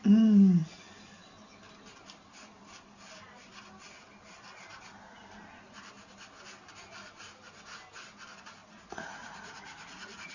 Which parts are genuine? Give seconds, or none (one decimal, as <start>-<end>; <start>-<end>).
0.0-8.6